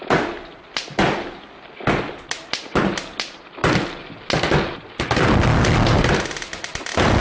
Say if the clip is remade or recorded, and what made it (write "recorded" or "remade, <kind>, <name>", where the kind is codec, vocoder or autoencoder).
recorded